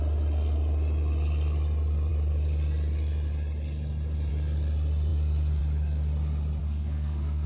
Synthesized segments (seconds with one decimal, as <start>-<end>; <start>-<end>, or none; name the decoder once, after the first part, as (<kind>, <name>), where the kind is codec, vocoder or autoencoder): 6.6-7.5 (codec, SNAC)